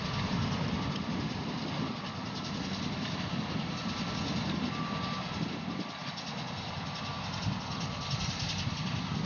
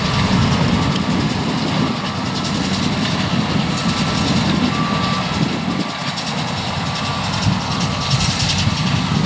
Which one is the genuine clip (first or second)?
second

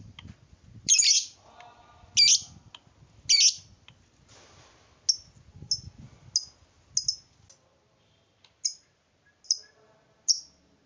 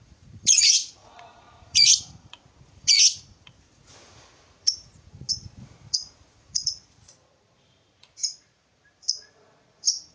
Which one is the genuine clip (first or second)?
first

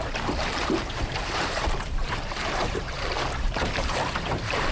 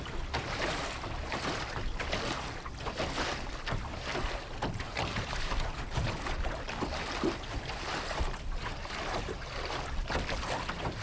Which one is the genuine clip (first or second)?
second